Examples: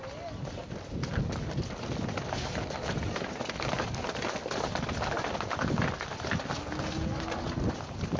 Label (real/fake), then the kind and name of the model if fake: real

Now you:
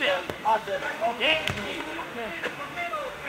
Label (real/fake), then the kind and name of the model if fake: fake, autoencoder, DAC-VAE